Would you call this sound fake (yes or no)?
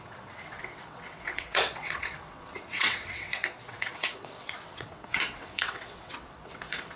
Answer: yes